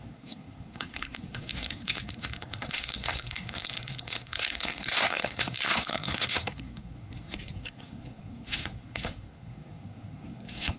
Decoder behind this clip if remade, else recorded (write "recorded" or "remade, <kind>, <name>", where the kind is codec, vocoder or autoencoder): remade, codec, SNAC